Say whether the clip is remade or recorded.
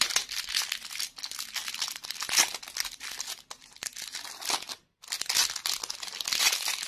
recorded